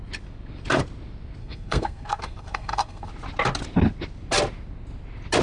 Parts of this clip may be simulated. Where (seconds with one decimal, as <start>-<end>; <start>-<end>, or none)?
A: 1.4-3.1